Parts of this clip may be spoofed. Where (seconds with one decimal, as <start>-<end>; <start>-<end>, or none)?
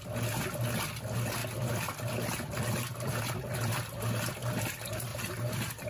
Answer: 1.4-4.3; 5.1-5.9